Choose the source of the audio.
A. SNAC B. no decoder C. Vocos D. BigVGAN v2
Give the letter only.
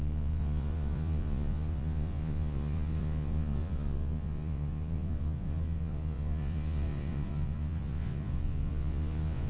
C